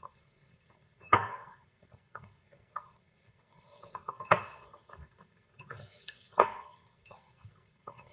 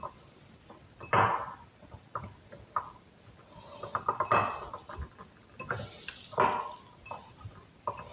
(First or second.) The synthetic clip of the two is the first